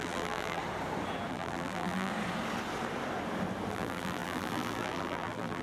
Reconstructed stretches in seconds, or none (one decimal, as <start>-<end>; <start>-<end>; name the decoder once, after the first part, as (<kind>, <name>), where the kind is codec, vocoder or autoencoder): 0.0-0.6 (vocoder, BigVGAN v2); 1.3-2.1; 3.7-5.6

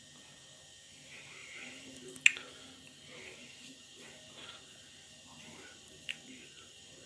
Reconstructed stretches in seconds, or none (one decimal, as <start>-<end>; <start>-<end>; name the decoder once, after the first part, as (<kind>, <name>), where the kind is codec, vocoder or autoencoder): 1.4-2.1 (vocoder, BigVGAN v2); 3.4-7.1

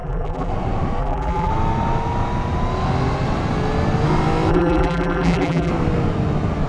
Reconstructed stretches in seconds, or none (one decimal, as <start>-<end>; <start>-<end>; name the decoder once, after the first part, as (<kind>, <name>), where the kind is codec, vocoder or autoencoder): 0.0-0.5 (vocoder, BigVGAN v2); 1.0-1.5; 4.5-5.7

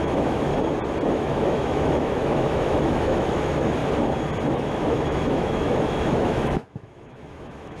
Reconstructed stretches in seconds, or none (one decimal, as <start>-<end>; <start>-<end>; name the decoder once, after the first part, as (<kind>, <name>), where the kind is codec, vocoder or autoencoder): 0.0-0.5 (autoencoder, DAC-VAE); 1.1-3.8; 4.5-7.8

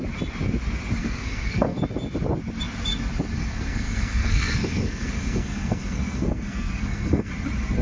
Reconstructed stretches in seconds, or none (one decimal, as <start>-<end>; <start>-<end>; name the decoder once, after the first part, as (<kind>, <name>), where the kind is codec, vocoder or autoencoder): 1.0-1.8 (codec, SNAC); 3.4-7.3

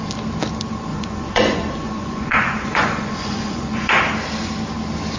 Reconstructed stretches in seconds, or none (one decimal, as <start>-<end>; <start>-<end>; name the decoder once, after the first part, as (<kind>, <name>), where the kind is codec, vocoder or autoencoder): 0.9-4.0 (vocoder, Vocos)